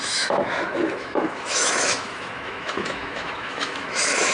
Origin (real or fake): fake